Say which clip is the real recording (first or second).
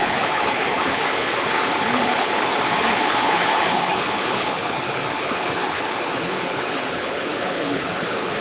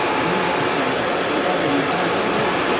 second